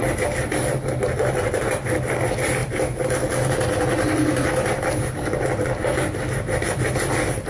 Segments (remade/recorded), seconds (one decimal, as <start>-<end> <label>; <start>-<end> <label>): 0.0-7.5 recorded